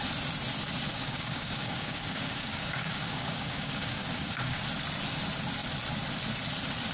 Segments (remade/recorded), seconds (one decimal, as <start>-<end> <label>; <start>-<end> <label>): 0.0-0.9 recorded; 0.9-4.6 remade; 4.6-6.9 recorded

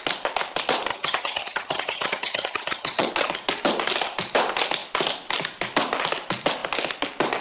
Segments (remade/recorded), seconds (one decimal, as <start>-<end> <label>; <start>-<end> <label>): 0.0-0.9 recorded; 0.9-3.1 remade; 3.1-7.4 recorded

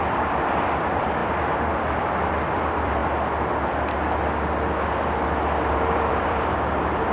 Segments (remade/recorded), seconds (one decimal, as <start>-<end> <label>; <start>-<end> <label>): 0.0-1.2 remade; 1.2-1.8 recorded; 1.8-3.0 remade; 3.0-5.7 recorded; 5.7-7.1 remade

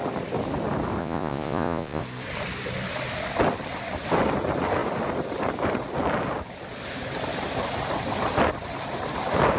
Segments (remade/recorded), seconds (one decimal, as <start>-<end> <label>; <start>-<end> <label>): 0.0-1.0 recorded; 1.0-2.0 remade; 2.0-9.6 recorded

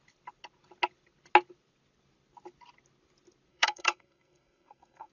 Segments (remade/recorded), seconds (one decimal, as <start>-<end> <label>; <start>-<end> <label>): 0.0-3.5 recorded; 3.5-5.1 remade

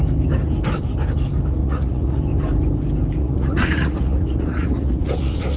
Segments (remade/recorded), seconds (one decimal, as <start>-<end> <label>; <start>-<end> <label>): 0.0-1.6 recorded; 1.6-2.2 remade; 2.2-3.2 recorded; 3.2-5.6 remade

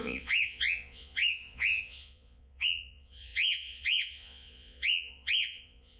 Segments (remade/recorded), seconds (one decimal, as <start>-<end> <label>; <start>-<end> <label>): 0.0-6.0 remade